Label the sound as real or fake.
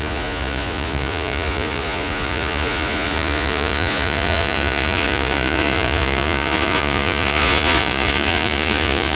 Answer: fake